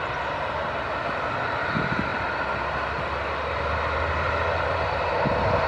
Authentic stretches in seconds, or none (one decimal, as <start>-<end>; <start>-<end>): 0.0-5.7